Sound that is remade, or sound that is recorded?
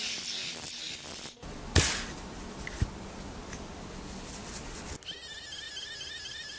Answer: recorded